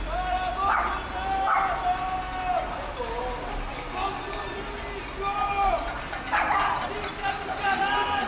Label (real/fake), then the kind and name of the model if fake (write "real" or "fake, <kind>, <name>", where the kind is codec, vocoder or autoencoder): real